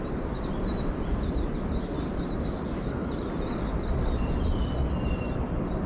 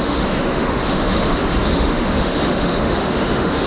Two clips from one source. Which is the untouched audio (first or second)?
first